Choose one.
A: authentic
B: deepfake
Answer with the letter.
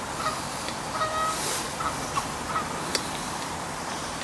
A